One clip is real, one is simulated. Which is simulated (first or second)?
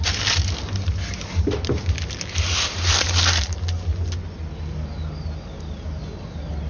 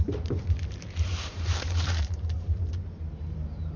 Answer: second